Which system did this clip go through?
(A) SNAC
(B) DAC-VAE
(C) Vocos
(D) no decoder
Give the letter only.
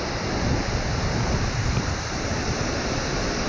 D